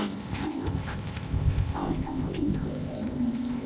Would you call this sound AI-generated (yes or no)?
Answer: yes